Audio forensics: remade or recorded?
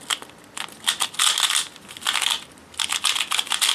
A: recorded